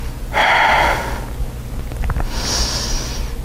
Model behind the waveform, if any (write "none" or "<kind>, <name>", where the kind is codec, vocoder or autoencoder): none